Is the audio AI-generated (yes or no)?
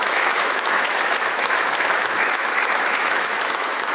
yes